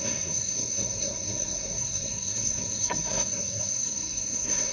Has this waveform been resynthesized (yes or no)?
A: yes